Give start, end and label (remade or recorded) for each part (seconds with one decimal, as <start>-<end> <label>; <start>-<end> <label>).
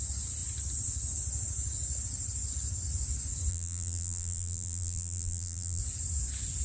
0.0-3.5 recorded; 3.5-5.8 remade; 5.8-6.6 recorded